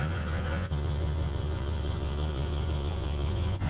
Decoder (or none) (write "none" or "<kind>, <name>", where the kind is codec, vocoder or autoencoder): vocoder, Vocos